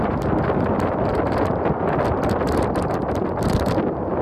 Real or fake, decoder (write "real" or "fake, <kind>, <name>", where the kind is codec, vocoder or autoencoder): fake, vocoder, BigVGAN v2